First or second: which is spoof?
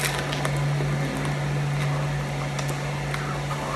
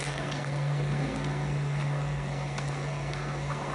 second